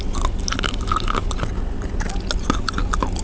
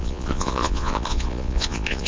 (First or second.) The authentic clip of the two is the first